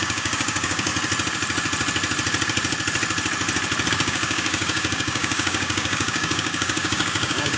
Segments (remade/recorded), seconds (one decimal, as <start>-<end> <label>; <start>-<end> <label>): 0.0-0.9 remade; 0.9-3.9 recorded; 3.9-7.6 remade